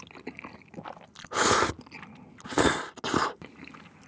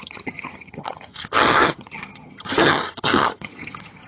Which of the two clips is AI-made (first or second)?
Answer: second